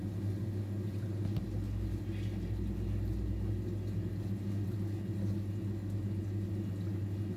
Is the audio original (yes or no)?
yes